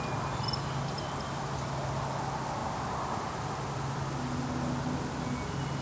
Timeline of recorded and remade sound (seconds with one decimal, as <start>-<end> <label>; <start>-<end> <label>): 0.0-5.8 recorded